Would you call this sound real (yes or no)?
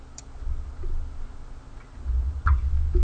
yes